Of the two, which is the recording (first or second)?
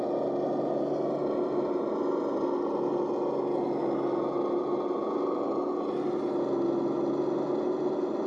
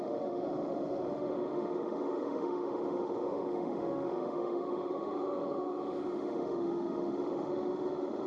first